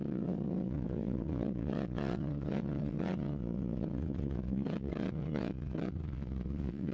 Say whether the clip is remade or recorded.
remade